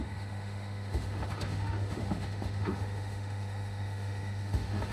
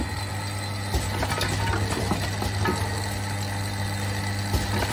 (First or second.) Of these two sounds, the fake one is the first